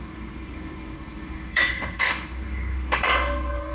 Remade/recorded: remade